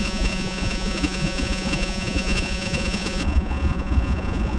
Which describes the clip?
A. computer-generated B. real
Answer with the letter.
A